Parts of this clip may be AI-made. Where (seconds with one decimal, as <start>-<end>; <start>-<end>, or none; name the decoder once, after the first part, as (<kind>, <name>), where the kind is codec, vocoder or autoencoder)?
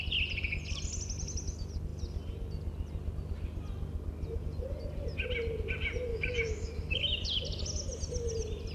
6.1-7.0 (autoencoder, DAC-VAE)